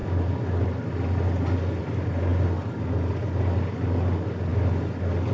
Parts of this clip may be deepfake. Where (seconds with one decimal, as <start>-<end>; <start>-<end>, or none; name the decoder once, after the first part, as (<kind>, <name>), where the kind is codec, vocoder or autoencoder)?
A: none